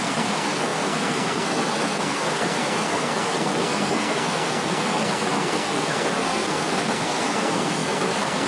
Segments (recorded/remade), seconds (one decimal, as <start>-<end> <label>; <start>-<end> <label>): 0.0-8.5 remade